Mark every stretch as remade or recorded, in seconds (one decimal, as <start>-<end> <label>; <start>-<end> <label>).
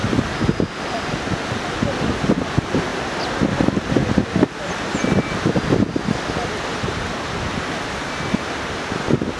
0.0-6.7 recorded; 6.7-7.5 remade; 7.5-9.4 recorded